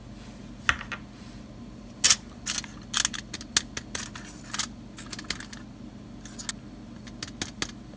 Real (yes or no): yes